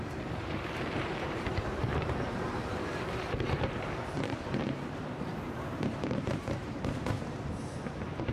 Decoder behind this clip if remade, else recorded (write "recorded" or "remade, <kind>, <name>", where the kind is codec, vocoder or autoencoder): remade, vocoder, BigVGAN v2